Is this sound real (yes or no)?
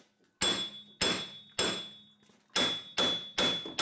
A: yes